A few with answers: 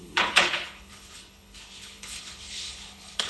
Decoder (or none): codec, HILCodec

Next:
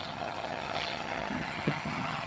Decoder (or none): vocoder, HiFi-GAN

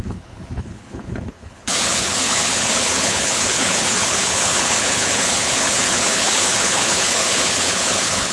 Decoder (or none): codec, HILCodec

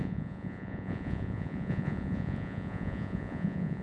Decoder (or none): vocoder, Vocos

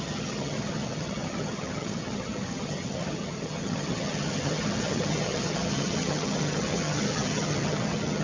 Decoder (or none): vocoder, HiFi-GAN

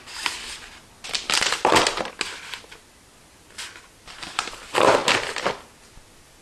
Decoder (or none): none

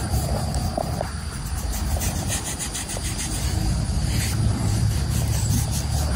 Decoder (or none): vocoder, BigVGAN v2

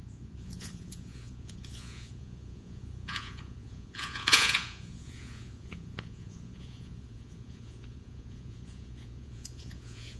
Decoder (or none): vocoder, Vocos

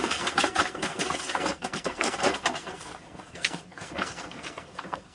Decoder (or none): codec, SNAC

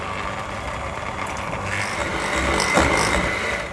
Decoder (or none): none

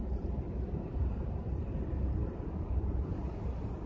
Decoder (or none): none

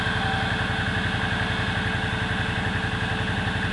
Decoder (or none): none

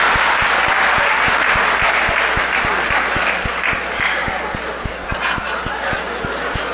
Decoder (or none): none